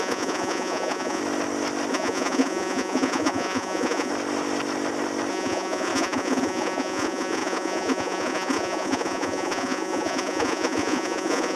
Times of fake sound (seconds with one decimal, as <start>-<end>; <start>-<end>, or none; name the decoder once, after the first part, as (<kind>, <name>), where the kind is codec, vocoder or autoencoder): 0.0-1.2 (vocoder, Vocos); 1.9-4.1; 5.3-11.6